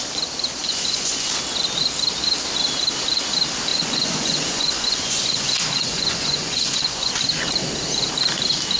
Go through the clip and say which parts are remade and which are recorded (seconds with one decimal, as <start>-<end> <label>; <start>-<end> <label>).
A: 0.0-0.6 recorded; 0.6-1.3 remade; 1.3-3.7 recorded; 3.7-7.1 remade; 7.1-8.8 recorded